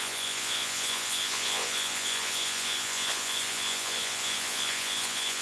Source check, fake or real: fake